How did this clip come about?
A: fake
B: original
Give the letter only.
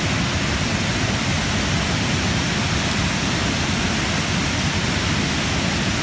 B